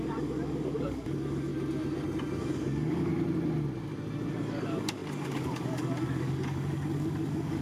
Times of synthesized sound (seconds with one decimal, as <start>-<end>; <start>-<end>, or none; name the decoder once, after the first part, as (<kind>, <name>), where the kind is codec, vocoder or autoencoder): 0.0-1.5 (codec, DAC); 2.4-3.1; 4.3-7.6